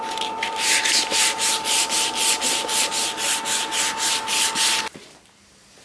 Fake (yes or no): yes